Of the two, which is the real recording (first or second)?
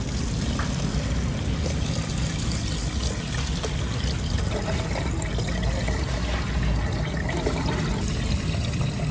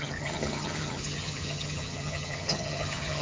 first